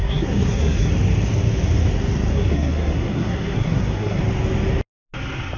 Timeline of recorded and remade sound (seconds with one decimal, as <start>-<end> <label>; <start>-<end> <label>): 0.0-0.9 remade; 0.9-2.3 recorded; 2.3-4.2 remade; 4.2-5.6 recorded